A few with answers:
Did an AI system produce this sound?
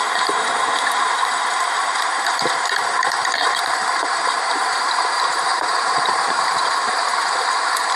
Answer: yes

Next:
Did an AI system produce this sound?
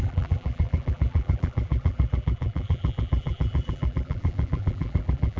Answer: yes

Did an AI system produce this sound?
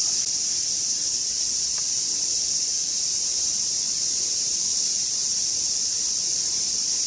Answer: yes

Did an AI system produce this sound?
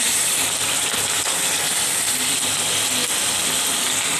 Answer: no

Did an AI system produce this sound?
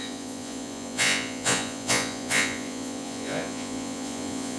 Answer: yes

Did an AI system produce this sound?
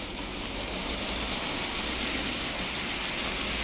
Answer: no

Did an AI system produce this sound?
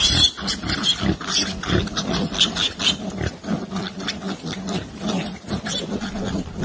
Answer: no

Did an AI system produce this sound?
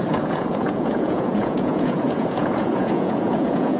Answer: yes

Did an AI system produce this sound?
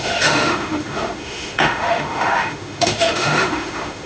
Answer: yes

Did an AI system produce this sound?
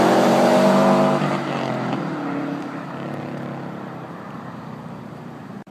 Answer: yes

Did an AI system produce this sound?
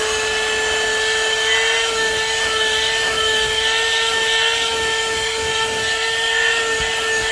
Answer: no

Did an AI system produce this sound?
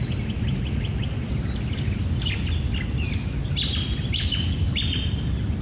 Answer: no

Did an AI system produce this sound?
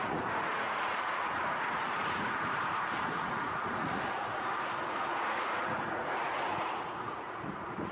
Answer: yes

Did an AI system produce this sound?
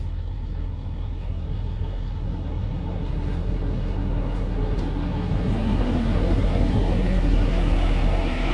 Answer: yes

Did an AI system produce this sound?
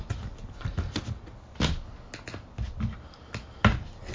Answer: no